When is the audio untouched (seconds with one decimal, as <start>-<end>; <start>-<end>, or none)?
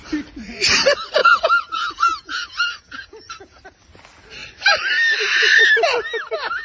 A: 0.0-1.2; 3.6-6.6